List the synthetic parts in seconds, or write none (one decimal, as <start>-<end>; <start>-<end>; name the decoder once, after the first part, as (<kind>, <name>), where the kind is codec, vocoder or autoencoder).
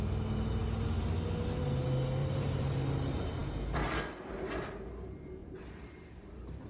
2.2-2.7 (vocoder, BigVGAN v2); 5.4-6.7